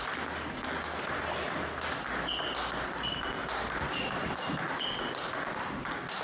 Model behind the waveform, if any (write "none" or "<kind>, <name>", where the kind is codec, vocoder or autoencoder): none